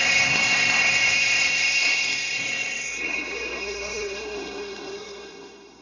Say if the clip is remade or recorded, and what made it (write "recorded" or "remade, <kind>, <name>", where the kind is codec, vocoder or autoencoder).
remade, codec, SNAC